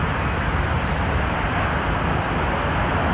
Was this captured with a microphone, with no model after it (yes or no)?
yes